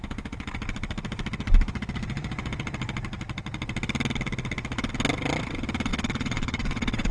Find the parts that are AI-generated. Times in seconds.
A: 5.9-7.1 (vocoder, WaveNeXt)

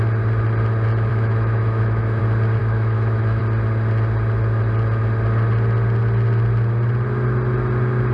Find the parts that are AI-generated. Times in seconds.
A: 1.1-2.2 (autoencoder, DAC-VAE); 2.6-3.4